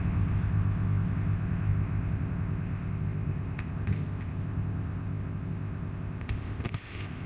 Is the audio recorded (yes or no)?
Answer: no